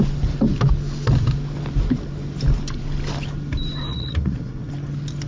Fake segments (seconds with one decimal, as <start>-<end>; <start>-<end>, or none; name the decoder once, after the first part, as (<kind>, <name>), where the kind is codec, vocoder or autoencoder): 3.9-4.7 (vocoder, Vocos)